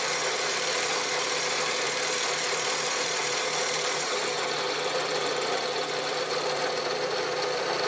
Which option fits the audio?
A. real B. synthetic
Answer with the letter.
B